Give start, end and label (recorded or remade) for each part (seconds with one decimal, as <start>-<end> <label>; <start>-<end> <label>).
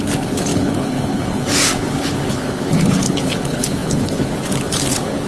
0.0-5.3 remade